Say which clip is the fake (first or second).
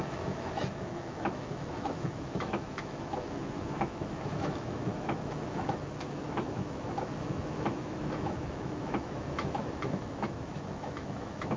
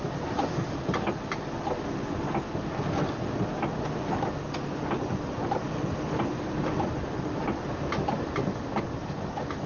first